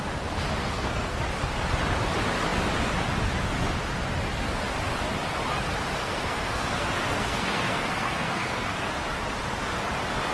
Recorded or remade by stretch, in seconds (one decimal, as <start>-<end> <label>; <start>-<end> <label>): 0.0-0.6 recorded; 0.6-1.2 remade; 1.2-6.0 recorded; 6.0-8.9 remade; 8.9-10.3 recorded